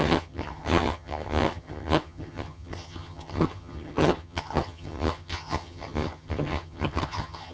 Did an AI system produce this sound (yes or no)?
yes